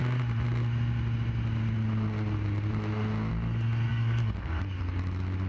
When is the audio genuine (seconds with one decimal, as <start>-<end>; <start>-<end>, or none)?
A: 0.0-3.9; 4.8-5.5